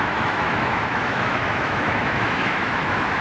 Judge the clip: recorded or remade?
remade